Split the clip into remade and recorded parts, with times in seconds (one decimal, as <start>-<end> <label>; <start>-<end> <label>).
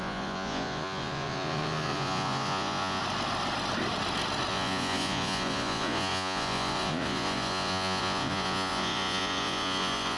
0.0-3.0 remade; 3.0-4.5 recorded; 4.5-10.2 remade